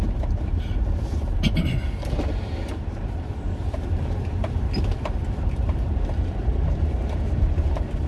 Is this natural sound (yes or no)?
no